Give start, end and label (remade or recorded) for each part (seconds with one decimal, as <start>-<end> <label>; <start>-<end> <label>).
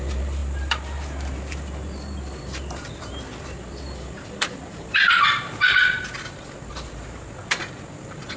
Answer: 0.0-8.4 remade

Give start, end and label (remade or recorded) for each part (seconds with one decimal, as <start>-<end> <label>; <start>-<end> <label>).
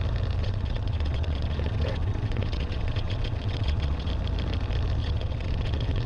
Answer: 0.0-0.4 recorded; 0.4-4.1 remade; 4.1-5.0 recorded; 5.0-6.1 remade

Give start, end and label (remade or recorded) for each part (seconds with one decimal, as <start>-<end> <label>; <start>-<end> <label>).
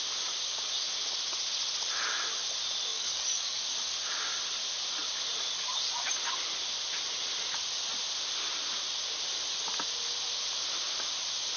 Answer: 0.0-2.9 recorded; 2.9-3.6 remade; 3.6-11.6 recorded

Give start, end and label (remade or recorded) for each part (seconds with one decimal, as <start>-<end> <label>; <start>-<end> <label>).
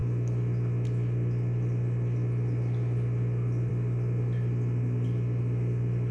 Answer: 0.0-6.1 recorded